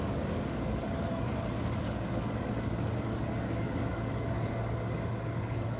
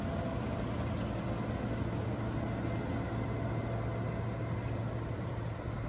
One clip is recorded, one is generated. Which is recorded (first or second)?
second